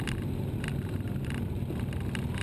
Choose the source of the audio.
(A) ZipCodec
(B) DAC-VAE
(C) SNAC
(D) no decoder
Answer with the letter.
D